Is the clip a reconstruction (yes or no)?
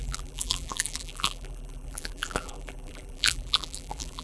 yes